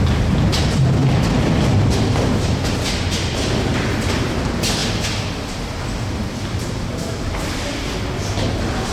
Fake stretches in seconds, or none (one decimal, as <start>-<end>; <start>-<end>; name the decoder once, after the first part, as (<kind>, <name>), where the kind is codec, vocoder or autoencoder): none